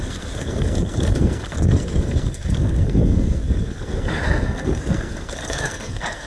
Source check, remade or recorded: remade